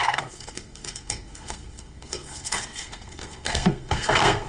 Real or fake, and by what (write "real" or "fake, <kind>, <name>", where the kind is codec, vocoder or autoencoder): fake, codec, SNAC